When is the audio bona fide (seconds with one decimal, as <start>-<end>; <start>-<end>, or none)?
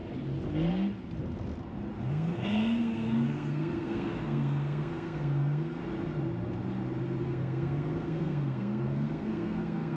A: 0.0-2.1; 5.8-7.2